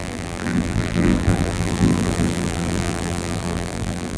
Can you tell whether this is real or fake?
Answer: fake